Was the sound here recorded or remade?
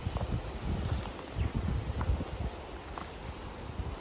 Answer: recorded